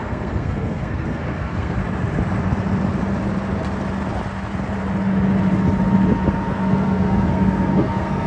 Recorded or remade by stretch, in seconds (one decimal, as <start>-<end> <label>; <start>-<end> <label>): 0.0-1.8 remade; 1.8-6.3 recorded; 6.3-8.3 remade